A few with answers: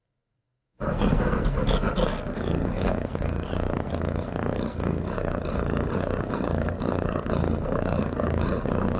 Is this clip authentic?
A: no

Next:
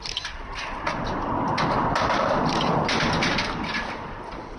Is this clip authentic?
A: yes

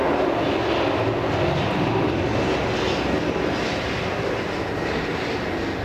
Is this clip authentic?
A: yes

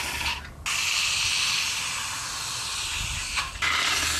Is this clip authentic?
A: yes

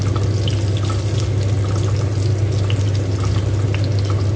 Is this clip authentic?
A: yes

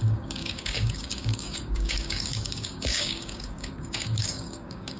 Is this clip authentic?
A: no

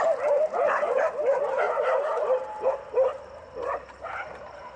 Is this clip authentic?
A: yes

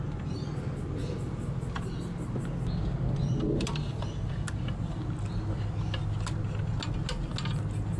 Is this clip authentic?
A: yes